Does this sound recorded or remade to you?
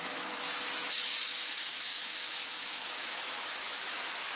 remade